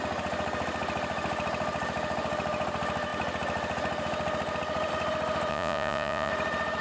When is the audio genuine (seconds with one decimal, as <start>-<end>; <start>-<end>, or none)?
0.0-5.5; 6.3-6.8